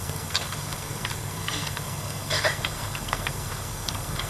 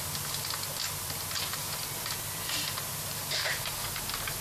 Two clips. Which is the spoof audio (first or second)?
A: first